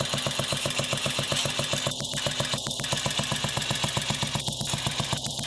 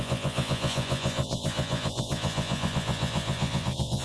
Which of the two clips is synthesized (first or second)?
second